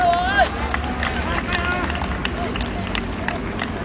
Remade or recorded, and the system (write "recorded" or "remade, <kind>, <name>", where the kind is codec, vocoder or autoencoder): recorded